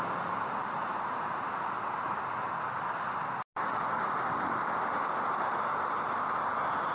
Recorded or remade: recorded